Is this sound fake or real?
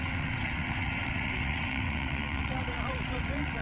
fake